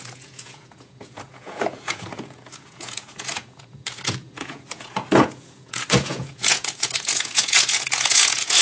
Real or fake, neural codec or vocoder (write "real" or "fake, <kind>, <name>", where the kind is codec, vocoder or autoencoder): fake, vocoder, Vocos